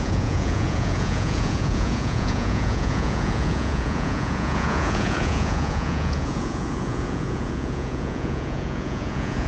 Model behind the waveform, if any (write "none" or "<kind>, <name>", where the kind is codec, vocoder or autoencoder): vocoder, Vocos